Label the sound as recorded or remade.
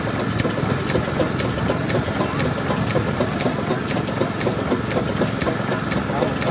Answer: recorded